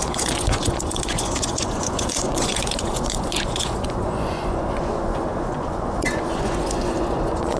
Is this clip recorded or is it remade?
remade